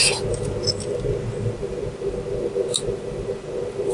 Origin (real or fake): real